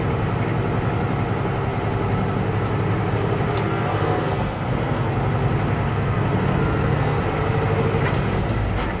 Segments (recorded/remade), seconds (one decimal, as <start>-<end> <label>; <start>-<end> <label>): 0.0-3.5 recorded; 3.5-5.1 remade; 5.1-5.9 recorded; 5.9-7.2 remade; 7.2-9.0 recorded